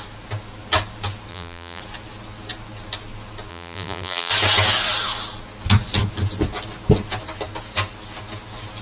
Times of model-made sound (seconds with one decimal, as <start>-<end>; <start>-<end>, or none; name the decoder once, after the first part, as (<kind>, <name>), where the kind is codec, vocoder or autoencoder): 1.3-1.8 (vocoder, BigVGAN v2); 3.5-4.3